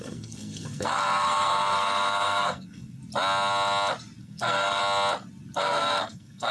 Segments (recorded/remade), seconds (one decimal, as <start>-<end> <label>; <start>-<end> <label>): 0.0-3.0 remade; 3.0-4.2 recorded; 4.2-4.8 remade; 4.8-5.6 recorded; 5.6-6.5 remade